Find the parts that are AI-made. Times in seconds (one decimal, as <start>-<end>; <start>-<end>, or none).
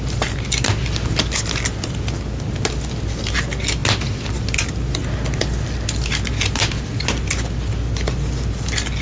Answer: none